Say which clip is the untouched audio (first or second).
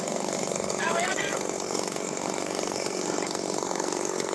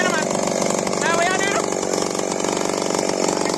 second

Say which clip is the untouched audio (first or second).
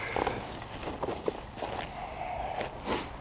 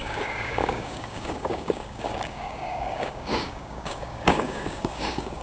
first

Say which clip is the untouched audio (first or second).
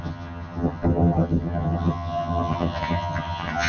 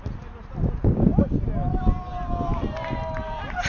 second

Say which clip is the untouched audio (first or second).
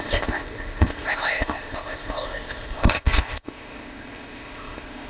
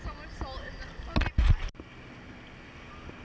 second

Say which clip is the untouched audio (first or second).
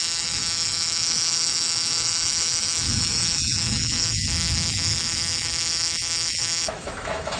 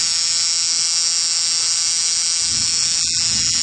second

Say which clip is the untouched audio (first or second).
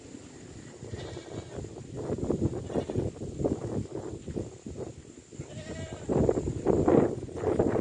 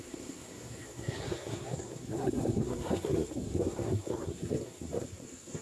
first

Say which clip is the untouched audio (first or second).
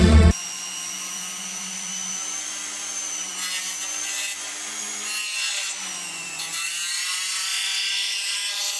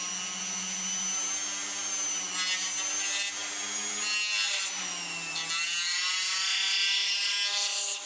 second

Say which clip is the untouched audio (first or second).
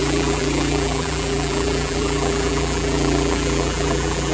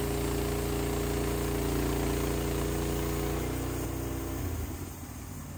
second